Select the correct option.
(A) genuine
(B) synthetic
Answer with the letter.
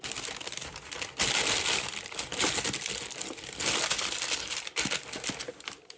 A